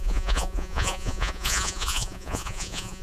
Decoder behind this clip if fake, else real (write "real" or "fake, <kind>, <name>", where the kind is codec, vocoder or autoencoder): fake, vocoder, Vocos